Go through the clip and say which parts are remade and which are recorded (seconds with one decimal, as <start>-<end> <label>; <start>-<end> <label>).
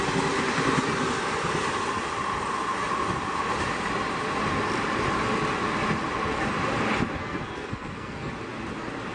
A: 0.0-7.2 recorded; 7.2-8.3 remade; 8.3-9.1 recorded